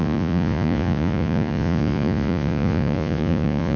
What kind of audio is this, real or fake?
fake